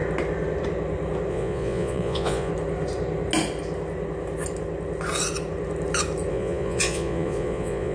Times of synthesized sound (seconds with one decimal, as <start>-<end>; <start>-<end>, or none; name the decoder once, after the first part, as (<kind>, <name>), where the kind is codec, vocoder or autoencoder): 1.3-2.5 (vocoder, Vocos); 6.3-7.9